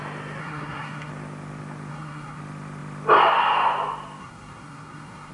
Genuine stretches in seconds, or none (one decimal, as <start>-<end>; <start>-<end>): 0.0-0.4; 1.1-1.9; 2.4-4.2